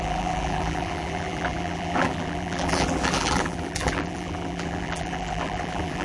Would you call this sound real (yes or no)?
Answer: no